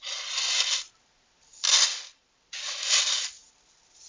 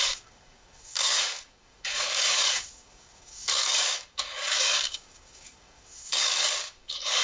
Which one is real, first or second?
first